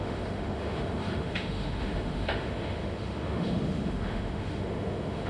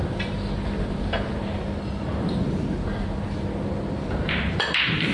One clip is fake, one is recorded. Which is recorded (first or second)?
second